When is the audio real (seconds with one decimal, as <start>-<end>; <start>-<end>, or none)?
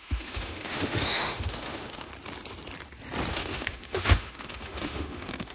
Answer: 2.1-3.3